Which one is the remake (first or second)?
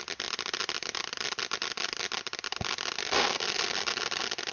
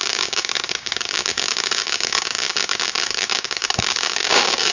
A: second